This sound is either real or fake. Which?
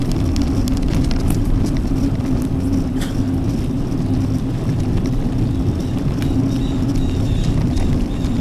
real